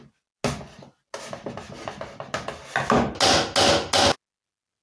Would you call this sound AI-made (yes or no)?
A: no